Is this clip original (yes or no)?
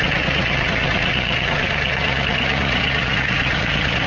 no